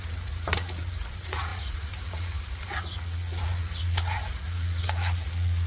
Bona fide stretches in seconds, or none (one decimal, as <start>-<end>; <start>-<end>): none